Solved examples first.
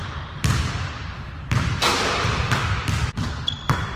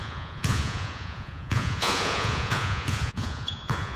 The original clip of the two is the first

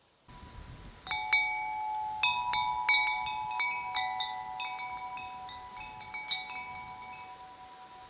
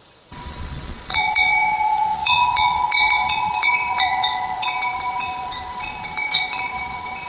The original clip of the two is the first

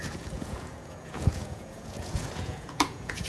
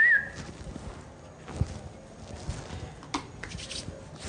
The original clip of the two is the second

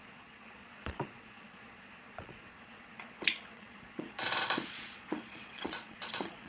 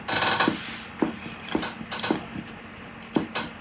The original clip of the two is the second